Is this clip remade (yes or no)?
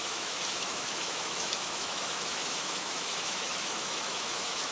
yes